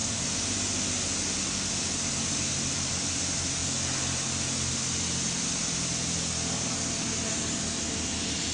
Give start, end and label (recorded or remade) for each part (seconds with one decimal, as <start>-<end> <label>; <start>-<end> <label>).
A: 0.0-8.5 recorded